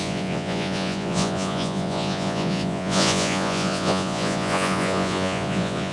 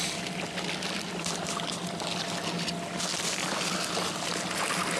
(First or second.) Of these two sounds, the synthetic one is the first